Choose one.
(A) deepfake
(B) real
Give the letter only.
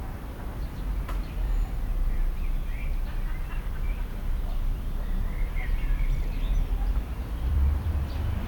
A